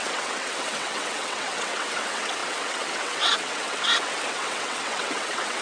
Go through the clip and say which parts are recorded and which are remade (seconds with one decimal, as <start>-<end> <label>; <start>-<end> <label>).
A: 0.0-5.6 remade